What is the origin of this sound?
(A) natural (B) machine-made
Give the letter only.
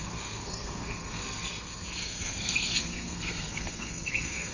B